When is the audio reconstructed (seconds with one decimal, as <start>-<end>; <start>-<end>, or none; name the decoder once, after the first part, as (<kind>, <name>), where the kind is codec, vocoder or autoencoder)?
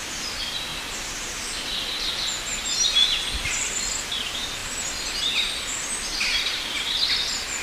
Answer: none